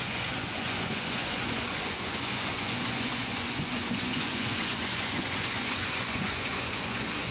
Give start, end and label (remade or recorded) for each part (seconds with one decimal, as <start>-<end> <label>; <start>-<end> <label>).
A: 0.0-7.3 remade